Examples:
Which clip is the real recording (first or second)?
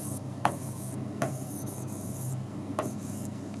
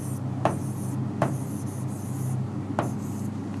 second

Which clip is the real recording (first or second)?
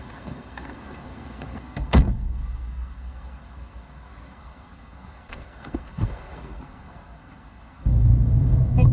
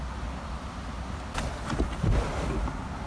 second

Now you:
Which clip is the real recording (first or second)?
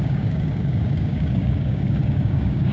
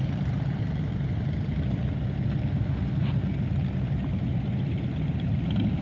second